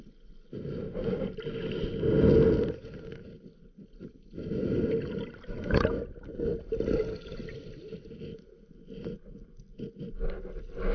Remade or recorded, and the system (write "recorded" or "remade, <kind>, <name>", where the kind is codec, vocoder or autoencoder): recorded